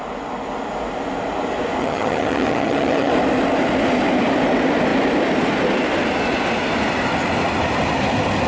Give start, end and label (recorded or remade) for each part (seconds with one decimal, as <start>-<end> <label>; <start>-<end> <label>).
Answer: 0.0-1.8 recorded; 1.8-3.1 remade; 3.1-8.5 recorded